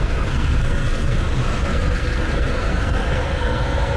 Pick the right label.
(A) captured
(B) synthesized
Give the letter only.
B